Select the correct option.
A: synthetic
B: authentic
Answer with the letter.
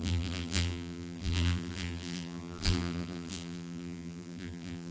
A